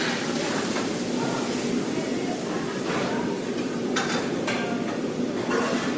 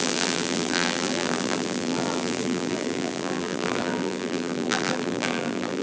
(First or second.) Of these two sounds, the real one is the first